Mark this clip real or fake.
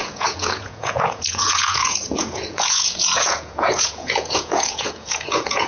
fake